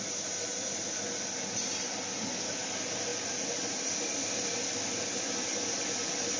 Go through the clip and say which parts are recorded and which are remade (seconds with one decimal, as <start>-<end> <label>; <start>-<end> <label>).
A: 0.0-6.4 recorded